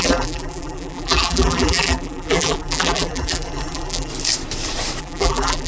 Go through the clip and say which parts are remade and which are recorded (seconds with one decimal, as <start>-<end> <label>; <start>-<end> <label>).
0.0-4.1 remade; 4.1-5.0 recorded; 5.0-5.7 remade